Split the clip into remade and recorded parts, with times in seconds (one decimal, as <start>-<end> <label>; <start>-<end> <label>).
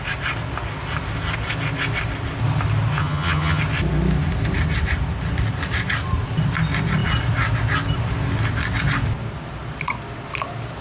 0.0-3.0 recorded; 3.0-3.6 remade; 3.6-10.8 recorded